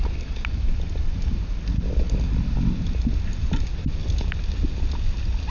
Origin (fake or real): real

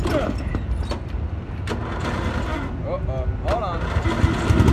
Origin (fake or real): real